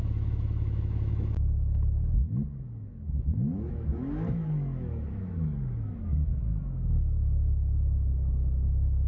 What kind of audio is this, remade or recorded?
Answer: remade